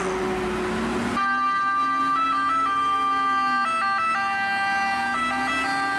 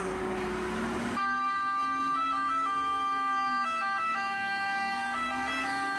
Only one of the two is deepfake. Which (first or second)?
second